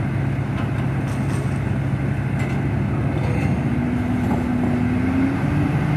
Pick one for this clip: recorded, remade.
recorded